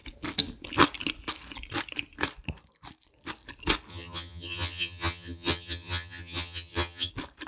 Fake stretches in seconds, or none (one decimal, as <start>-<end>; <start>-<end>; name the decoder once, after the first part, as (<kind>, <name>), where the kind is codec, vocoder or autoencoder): 3.9-7.1 (vocoder, HiFi-GAN)